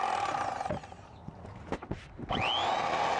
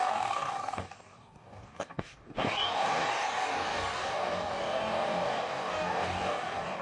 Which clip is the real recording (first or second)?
first